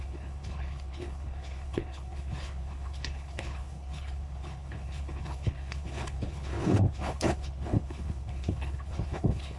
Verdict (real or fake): fake